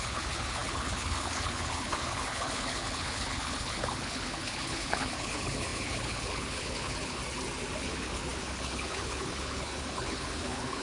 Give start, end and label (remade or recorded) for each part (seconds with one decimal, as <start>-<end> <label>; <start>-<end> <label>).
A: 0.0-7.2 remade; 7.2-7.8 recorded; 7.8-10.8 remade